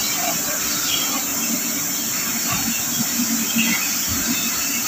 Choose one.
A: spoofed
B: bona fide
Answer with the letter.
B